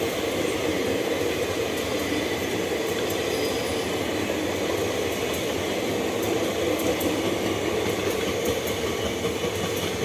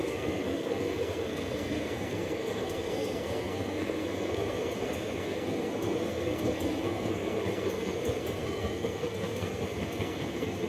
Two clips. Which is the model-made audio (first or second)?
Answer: second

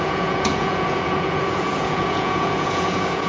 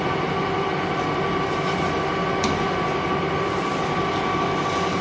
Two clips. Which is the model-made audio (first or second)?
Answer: first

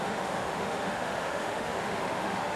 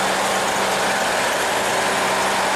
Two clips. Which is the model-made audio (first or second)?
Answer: first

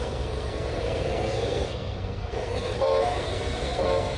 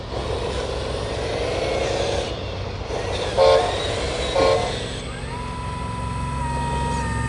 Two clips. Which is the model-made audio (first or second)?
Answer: first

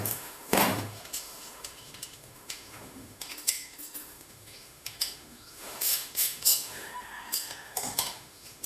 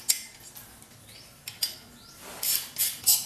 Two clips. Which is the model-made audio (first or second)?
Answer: first